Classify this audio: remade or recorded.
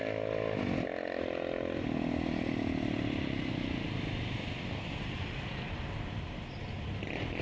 recorded